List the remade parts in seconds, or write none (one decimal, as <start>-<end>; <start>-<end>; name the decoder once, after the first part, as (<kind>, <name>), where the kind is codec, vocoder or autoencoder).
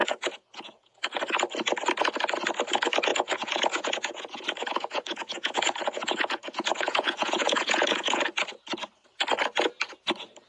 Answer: 0.0-1.2 (vocoder, Vocos); 3.1-8.2